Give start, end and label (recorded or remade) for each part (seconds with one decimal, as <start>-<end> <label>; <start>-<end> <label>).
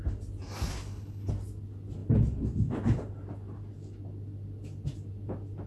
0.0-0.7 recorded; 0.7-1.3 remade; 1.3-5.7 recorded